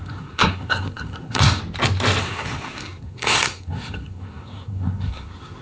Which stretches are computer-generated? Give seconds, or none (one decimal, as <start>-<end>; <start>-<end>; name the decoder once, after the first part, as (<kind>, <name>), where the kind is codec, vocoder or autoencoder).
0.0-1.6 (codec, SNAC); 2.2-5.6

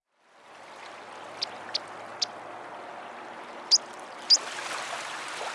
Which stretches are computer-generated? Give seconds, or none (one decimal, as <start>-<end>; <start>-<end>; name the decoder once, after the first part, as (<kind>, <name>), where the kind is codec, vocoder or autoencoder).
none

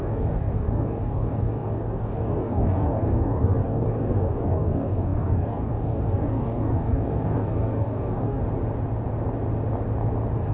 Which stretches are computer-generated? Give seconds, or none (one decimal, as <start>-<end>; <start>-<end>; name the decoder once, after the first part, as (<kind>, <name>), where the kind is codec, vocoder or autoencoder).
0.0-8.4 (codec, DAC)